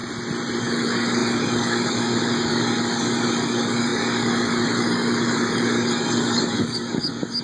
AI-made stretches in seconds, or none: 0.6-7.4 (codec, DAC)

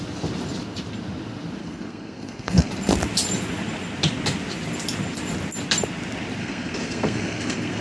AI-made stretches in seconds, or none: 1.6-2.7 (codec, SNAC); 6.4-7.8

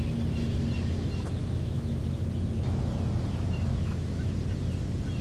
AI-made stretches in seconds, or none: 1.4-2.0 (autoencoder, DAC-VAE); 3.7-4.3

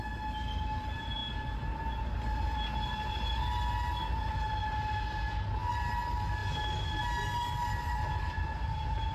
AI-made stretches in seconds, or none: none